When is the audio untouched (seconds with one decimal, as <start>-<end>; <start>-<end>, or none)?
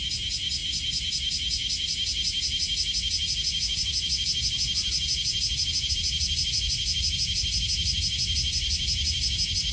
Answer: 0.0-9.7